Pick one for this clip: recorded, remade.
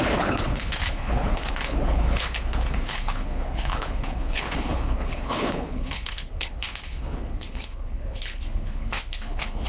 remade